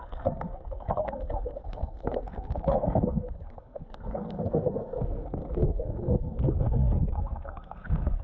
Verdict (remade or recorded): remade